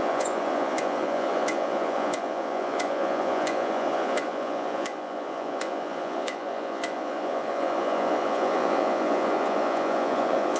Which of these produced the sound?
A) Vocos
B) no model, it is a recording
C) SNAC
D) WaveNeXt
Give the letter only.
A